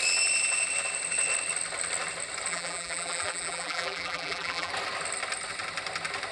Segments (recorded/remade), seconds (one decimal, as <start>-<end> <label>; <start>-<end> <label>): 0.0-2.5 recorded; 2.5-4.7 remade; 4.7-6.3 recorded